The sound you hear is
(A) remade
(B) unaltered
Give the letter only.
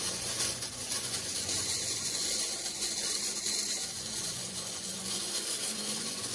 A